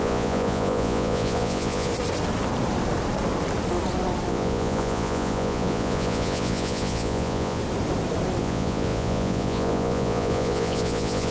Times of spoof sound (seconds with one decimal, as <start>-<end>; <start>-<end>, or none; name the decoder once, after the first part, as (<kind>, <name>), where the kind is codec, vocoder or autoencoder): 0.0-1.9 (vocoder, Vocos); 4.3-7.6; 8.4-11.3

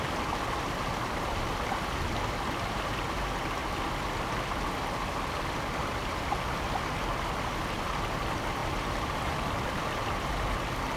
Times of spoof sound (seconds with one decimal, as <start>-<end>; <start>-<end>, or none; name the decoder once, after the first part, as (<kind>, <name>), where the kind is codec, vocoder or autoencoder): 3.6-4.3 (vocoder, BigVGAN v2); 8.6-10.3